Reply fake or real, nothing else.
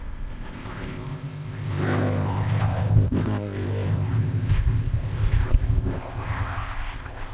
fake